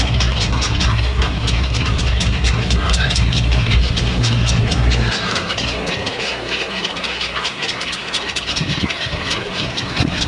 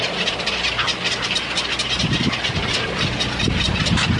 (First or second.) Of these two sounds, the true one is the second